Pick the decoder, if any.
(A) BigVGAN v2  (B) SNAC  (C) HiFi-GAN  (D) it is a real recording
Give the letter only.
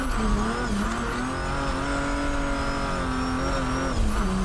D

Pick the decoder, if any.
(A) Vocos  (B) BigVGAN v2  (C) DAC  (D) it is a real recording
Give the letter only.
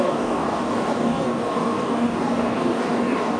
C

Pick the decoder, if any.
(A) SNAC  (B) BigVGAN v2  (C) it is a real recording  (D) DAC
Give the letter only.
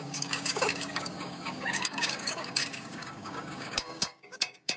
D